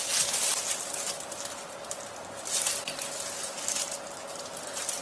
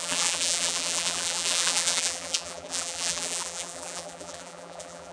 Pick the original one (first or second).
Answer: first